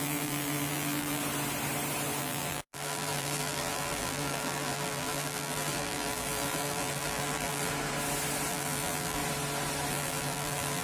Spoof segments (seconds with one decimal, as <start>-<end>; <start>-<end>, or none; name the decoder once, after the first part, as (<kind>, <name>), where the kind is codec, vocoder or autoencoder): 0.0-1.2 (vocoder, BigVGAN v2); 2.2-7.7; 8.5-9.2; 9.9-10.8